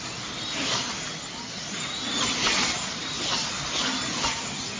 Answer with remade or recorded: recorded